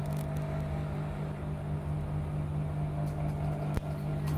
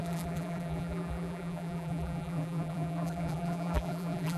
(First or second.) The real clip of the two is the first